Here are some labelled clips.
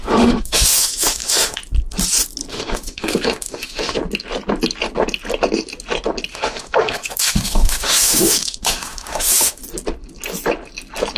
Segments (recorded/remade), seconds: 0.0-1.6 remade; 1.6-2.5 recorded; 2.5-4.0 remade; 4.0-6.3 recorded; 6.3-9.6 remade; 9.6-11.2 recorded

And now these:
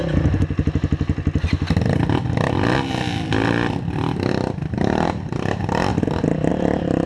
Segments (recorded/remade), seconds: 0.0-4.3 recorded; 4.3-5.9 remade; 5.9-6.5 recorded; 6.5-7.1 remade

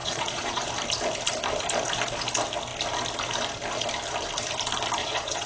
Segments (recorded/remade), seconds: 0.0-0.7 remade; 0.7-5.0 recorded; 5.0-5.5 remade